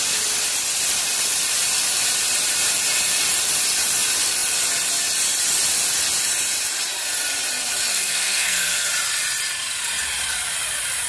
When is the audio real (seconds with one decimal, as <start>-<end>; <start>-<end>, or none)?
0.0-7.9; 8.9-11.1